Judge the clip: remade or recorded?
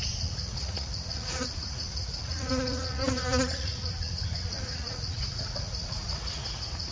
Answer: remade